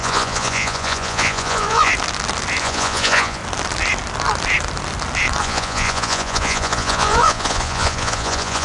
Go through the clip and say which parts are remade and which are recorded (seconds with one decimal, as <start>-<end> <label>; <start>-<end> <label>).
0.0-1.9 remade; 1.9-2.6 recorded; 2.6-3.4 remade; 3.4-5.4 recorded; 5.4-8.6 remade